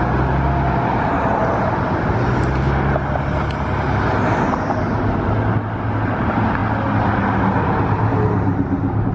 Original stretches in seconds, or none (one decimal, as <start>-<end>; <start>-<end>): 0.0-9.1